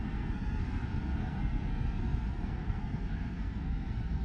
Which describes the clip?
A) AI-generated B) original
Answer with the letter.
A